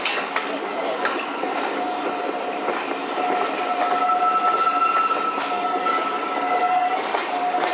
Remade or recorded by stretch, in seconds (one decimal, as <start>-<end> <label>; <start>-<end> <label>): 0.0-1.4 remade; 1.4-5.5 recorded; 5.5-7.7 remade